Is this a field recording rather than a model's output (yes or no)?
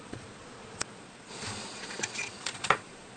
no